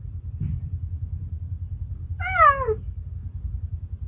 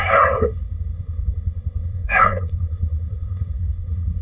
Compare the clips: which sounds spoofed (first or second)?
second